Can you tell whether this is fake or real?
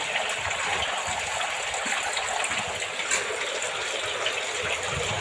real